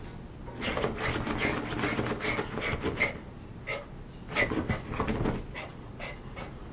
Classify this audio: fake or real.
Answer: real